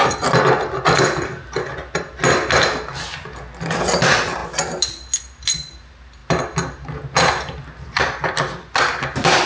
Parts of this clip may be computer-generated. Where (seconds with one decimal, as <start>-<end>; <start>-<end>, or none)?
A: none